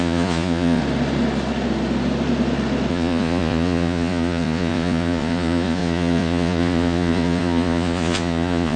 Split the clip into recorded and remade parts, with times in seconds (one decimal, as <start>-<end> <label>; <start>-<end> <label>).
0.0-0.8 remade; 0.8-2.9 recorded; 2.9-8.8 remade